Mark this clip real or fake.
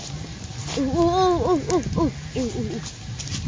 real